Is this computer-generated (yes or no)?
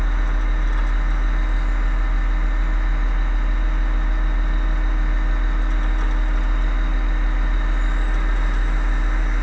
no